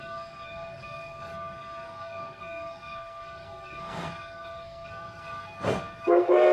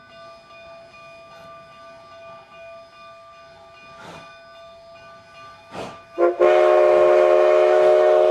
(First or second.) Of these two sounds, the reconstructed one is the first